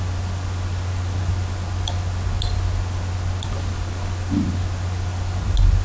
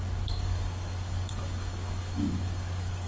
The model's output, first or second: second